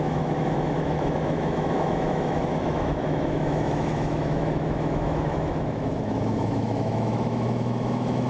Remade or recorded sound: remade